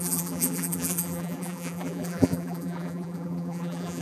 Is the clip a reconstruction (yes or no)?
yes